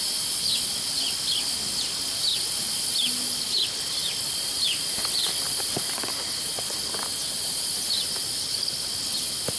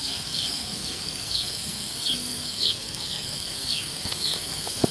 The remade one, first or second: second